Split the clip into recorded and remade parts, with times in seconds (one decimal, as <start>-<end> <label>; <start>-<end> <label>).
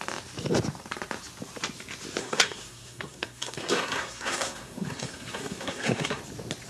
0.0-2.2 recorded; 2.2-6.2 remade; 6.2-6.7 recorded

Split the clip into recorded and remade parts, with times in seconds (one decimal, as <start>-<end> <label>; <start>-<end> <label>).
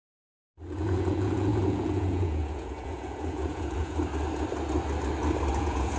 0.0-4.0 remade; 4.0-5.5 recorded; 5.5-6.0 remade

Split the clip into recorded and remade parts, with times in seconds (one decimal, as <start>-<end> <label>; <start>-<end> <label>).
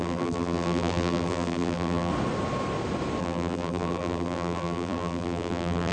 0.0-2.1 remade; 2.1-3.2 recorded; 3.2-5.9 remade